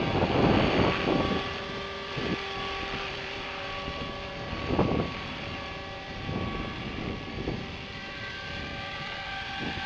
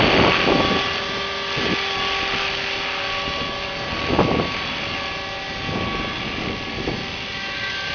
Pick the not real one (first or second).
first